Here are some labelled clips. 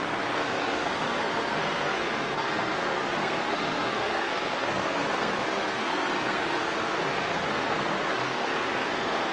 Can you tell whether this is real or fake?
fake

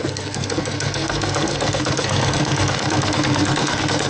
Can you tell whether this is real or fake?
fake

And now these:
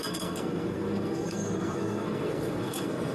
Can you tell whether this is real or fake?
fake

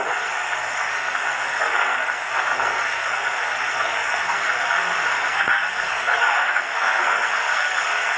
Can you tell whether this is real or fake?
fake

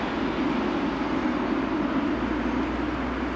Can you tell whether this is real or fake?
real